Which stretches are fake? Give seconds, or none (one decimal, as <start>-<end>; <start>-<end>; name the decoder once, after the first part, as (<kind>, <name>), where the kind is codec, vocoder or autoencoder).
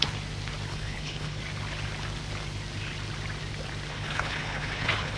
0.7-1.4 (codec, HILCodec); 3.9-5.2